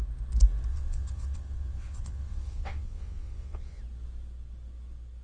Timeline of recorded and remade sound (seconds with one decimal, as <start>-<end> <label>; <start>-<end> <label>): 0.0-0.7 recorded; 0.7-3.8 remade; 3.8-5.2 recorded